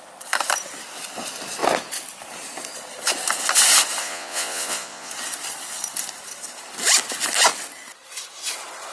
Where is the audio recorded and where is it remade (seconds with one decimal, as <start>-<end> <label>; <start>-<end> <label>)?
0.0-4.0 recorded; 4.0-5.1 remade; 5.1-8.9 recorded